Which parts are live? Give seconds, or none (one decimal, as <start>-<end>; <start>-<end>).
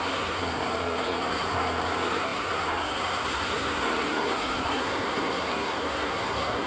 none